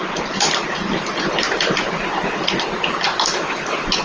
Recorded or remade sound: remade